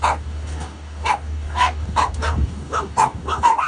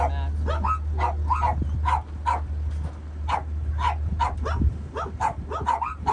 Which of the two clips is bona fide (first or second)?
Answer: second